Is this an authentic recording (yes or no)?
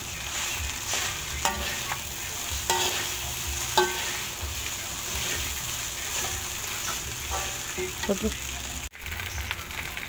yes